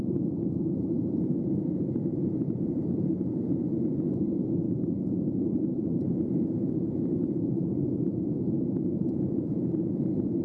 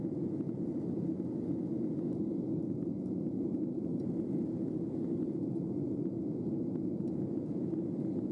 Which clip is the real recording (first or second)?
second